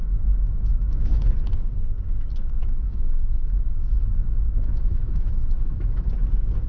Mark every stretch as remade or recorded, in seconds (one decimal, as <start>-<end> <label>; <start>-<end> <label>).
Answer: 0.0-1.3 remade; 1.3-2.6 recorded; 2.6-6.1 remade; 6.1-6.7 recorded